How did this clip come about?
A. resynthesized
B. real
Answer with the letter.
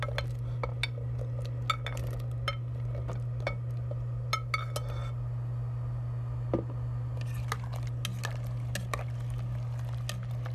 B